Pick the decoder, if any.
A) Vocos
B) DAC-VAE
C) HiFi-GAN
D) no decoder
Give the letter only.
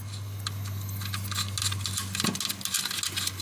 D